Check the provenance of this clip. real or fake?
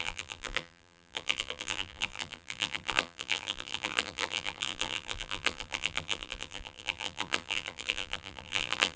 fake